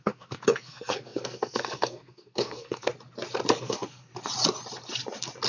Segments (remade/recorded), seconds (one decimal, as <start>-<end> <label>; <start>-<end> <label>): 0.0-2.9 remade; 2.9-3.6 recorded; 3.6-4.1 remade; 4.1-5.5 recorded